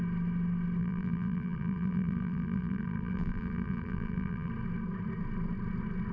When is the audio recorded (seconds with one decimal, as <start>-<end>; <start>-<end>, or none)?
0.0-0.8; 4.5-6.1